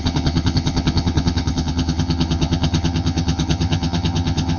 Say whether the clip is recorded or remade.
remade